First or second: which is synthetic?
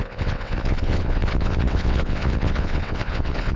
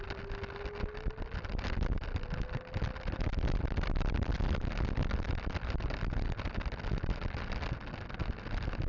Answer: first